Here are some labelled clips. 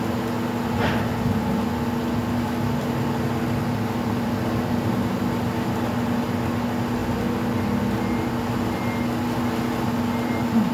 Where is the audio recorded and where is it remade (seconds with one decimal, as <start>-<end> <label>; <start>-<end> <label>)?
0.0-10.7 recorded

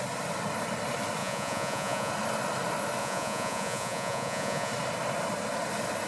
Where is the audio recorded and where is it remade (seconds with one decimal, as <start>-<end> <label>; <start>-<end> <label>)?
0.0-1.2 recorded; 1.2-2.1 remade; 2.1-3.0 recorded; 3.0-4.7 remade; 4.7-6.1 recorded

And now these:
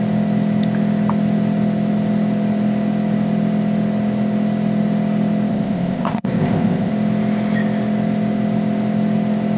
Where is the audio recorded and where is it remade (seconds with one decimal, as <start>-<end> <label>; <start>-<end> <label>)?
0.0-5.5 recorded; 5.5-6.9 remade; 6.9-9.6 recorded

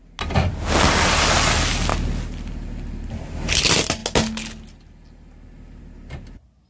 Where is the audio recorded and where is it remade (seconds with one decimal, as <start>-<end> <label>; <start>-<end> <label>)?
0.0-6.7 recorded